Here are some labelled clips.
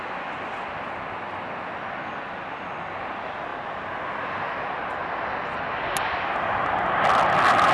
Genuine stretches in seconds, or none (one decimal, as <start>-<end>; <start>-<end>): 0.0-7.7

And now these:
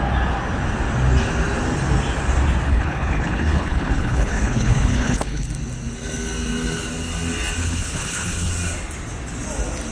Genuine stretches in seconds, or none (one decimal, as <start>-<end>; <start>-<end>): 0.0-2.7; 5.5-7.6; 8.5-9.9

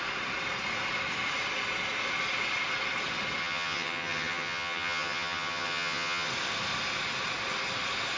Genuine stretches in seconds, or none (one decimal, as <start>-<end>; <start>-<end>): 0.0-3.4; 6.3-8.2

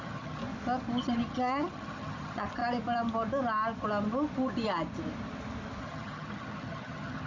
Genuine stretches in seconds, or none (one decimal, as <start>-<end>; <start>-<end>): 0.4-1.0; 2.6-5.8

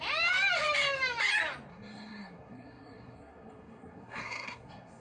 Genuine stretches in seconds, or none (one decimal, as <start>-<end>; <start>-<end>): 0.0-1.7